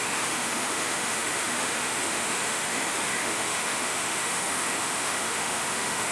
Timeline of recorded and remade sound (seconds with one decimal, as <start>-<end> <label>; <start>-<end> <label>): 0.0-6.1 remade